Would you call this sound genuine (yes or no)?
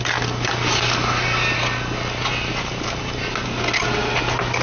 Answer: yes